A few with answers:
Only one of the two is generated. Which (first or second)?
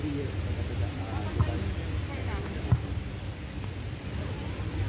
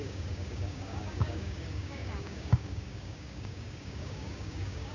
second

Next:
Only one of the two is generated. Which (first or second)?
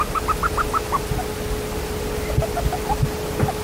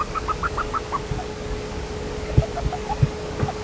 second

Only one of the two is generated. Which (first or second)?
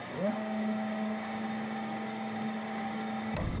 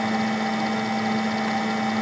first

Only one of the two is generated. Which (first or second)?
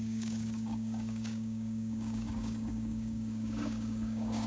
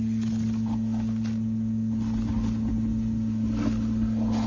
first